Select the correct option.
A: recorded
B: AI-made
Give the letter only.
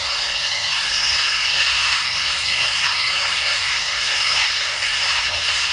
B